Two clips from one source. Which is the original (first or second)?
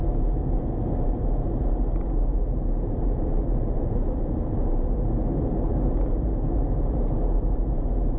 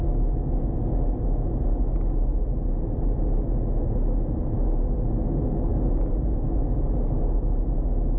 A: second